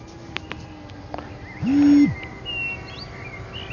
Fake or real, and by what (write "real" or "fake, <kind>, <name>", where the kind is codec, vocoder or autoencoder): real